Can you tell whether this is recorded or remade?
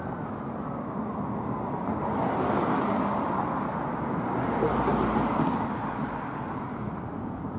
recorded